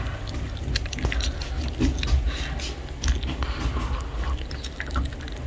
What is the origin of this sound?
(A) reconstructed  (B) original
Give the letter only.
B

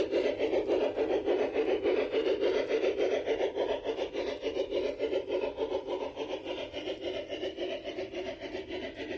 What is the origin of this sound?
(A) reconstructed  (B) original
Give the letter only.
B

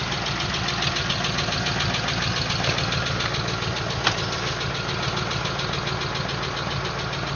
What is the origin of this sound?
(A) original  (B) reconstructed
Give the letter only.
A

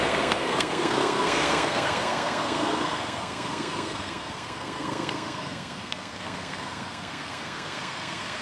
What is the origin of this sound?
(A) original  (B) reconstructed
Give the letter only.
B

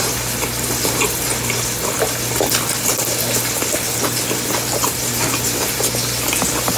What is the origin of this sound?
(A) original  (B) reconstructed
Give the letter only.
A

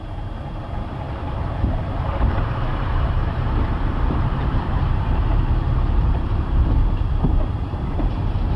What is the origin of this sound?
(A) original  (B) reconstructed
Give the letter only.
B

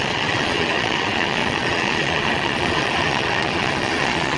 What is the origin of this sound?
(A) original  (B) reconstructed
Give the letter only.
B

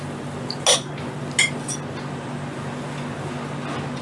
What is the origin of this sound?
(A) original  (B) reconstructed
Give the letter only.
A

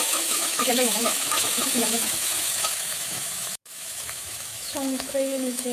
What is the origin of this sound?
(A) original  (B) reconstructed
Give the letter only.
B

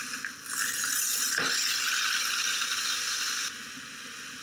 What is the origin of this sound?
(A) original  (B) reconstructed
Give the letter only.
A